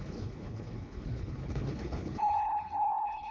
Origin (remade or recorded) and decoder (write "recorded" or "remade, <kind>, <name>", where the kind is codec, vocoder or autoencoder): remade, codec, HILCodec